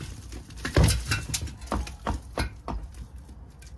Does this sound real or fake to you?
real